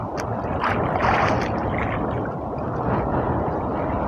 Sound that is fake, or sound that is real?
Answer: real